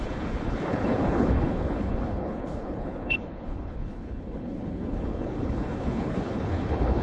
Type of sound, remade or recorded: remade